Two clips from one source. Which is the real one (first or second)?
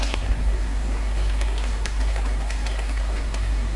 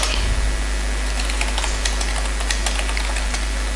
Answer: second